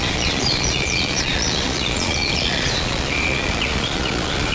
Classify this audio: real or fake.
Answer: fake